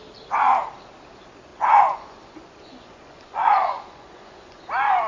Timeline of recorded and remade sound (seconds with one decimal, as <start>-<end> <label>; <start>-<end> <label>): 0.0-1.5 recorded; 1.5-4.6 remade; 4.6-5.1 recorded